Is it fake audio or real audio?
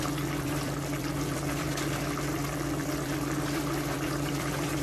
fake